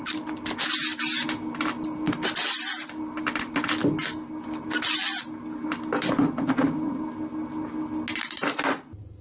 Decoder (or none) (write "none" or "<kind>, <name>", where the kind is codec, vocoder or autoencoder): none